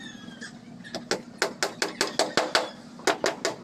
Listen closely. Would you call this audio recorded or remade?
recorded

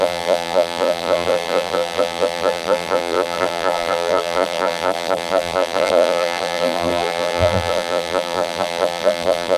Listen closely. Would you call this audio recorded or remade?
remade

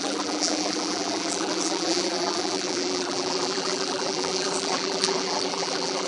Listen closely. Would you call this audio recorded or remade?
remade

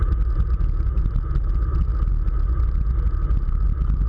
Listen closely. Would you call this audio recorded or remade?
recorded